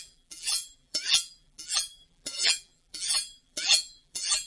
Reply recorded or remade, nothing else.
remade